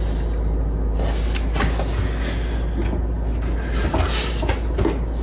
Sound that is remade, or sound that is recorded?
recorded